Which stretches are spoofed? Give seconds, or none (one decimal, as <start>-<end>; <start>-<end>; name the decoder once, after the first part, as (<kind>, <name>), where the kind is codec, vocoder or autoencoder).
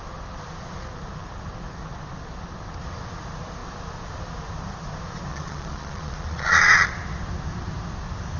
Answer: 5.3-6.9 (vocoder, Vocos)